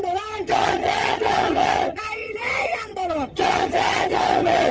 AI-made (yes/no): yes